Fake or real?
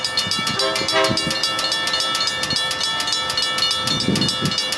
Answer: real